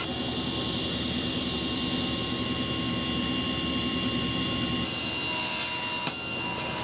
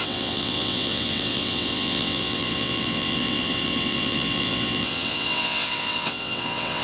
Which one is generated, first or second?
second